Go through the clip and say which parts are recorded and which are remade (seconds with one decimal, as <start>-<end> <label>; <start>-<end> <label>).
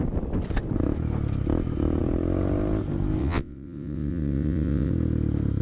0.0-3.2 recorded; 3.2-4.9 remade; 4.9-5.6 recorded